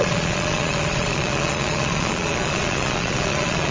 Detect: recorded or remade remade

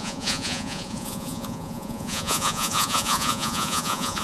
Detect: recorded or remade remade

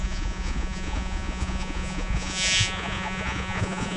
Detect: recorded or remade remade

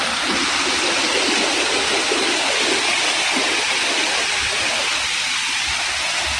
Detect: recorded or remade recorded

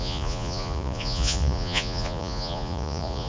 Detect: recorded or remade remade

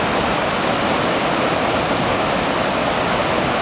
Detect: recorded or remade recorded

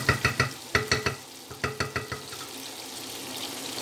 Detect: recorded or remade recorded